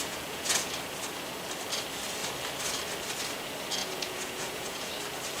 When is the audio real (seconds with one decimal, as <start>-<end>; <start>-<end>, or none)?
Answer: 0.7-3.8; 4.9-5.4